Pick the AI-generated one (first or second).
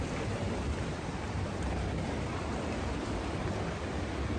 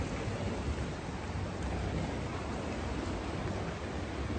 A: first